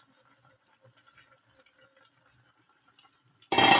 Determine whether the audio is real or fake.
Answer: real